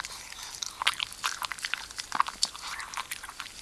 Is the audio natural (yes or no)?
yes